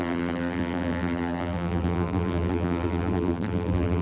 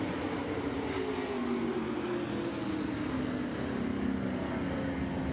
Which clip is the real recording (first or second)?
second